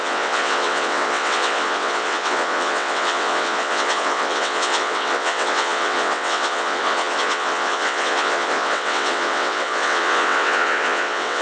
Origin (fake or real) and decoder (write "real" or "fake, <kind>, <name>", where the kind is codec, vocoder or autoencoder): fake, vocoder, WaveNeXt